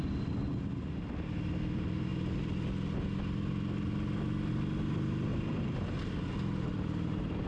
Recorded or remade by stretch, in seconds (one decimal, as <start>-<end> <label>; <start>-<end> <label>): 0.0-5.3 recorded; 5.3-6.1 remade; 6.1-6.7 recorded; 6.7-7.5 remade

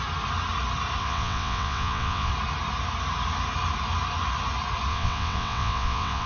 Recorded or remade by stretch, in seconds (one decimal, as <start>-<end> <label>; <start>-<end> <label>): 0.0-1.0 recorded; 1.0-2.3 remade; 2.3-4.9 recorded; 4.9-6.3 remade

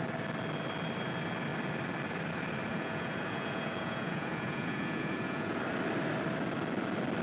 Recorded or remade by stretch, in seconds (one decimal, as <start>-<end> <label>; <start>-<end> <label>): 0.0-2.7 recorded; 2.7-5.6 remade; 5.6-7.2 recorded

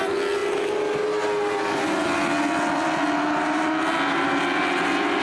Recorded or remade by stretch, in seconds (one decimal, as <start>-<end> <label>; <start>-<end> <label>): 0.0-5.2 recorded

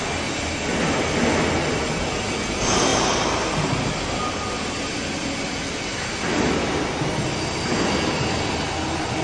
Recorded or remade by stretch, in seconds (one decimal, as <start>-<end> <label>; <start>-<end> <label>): 0.0-9.2 recorded

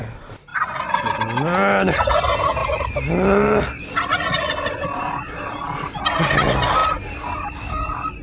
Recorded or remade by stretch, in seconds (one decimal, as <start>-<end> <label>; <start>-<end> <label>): 0.0-8.2 recorded